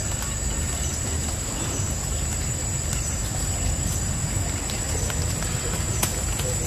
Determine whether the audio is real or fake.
real